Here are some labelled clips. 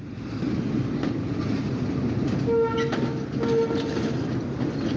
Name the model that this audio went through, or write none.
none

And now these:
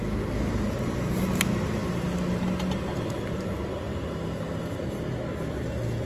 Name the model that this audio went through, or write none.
none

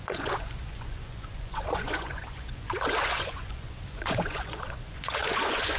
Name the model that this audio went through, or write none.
vocoder, Vocos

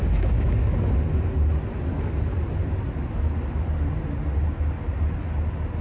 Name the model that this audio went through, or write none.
none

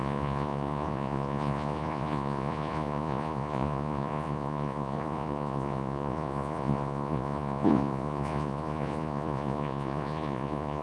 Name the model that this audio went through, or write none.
vocoder, Vocos